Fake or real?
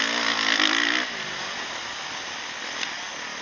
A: real